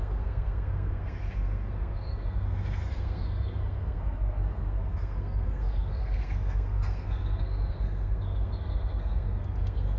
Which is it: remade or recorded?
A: remade